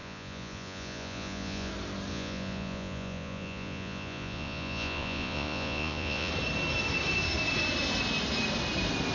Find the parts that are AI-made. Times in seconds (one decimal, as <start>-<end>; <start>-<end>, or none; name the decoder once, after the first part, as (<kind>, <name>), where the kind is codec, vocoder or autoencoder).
0.0-1.7 (vocoder, Vocos); 2.1-6.3